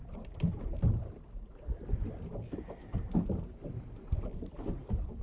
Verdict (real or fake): real